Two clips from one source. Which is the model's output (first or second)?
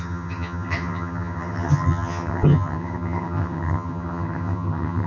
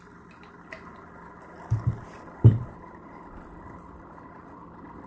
first